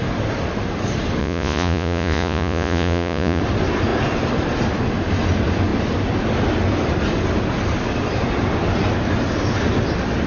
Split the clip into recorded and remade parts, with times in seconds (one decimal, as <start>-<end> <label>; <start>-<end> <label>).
0.0-1.2 recorded; 1.2-3.4 remade; 3.4-10.3 recorded